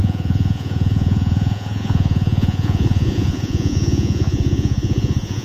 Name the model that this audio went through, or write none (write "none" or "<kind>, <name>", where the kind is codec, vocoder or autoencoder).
vocoder, Vocos